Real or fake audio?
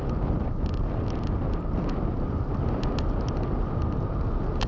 real